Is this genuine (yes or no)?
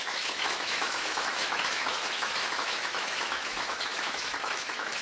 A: no